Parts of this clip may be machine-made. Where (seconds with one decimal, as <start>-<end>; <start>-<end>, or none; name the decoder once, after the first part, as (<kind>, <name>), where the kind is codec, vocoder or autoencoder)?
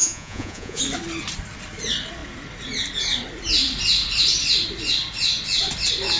0.0-0.8 (vocoder, Vocos)